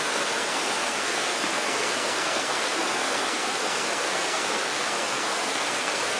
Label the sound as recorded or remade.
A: remade